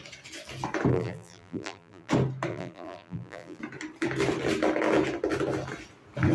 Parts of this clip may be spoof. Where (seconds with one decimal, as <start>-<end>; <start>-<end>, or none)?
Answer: 0.9-2.1; 2.5-3.6